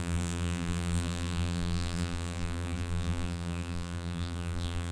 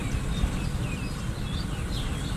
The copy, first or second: first